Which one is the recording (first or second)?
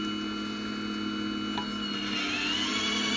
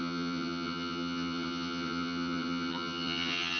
first